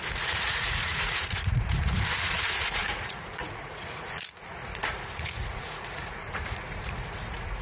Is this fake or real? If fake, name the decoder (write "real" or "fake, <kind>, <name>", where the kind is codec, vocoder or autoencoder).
fake, vocoder, Vocos